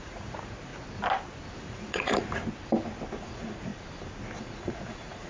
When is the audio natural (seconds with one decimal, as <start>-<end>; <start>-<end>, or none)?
0.7-1.6; 2.4-3.2; 3.7-4.4